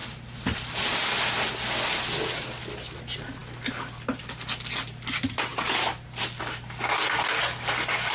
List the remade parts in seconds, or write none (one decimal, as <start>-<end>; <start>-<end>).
none